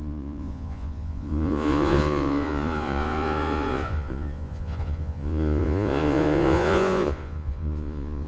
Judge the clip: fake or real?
fake